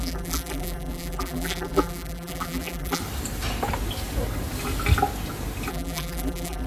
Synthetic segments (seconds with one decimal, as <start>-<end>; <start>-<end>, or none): 0.0-3.0; 5.7-6.7

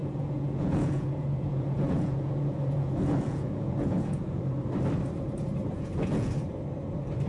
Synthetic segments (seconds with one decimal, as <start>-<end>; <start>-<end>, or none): 0.0-4.4; 5.6-6.3